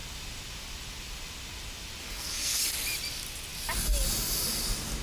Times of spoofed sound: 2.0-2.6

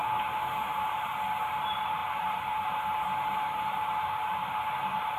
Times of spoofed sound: 0.0-1.1; 2.0-4.7

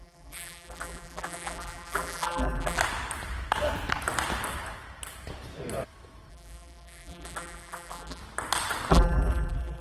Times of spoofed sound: 0.0-2.8; 6.3-8.2; 8.9-9.8

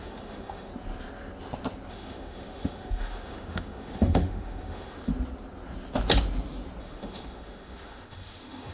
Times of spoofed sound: 0.0-0.7; 1.9-5.1; 6.8-8.7